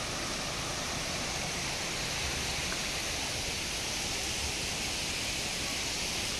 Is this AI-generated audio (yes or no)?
no